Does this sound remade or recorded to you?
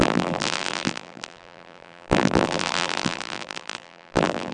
remade